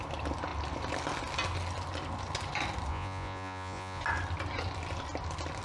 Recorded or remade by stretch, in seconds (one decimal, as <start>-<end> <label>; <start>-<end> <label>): 0.0-2.9 recorded; 2.9-4.0 remade; 4.0-5.6 recorded